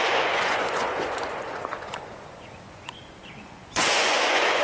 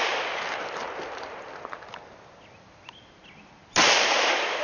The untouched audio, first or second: second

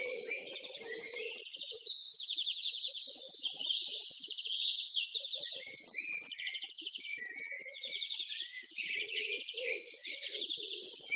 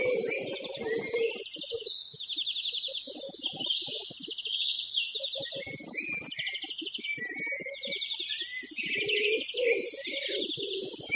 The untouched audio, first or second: second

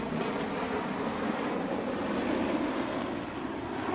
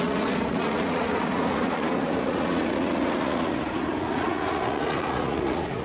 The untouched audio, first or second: first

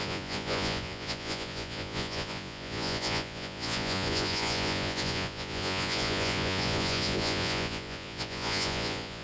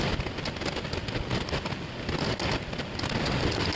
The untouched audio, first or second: second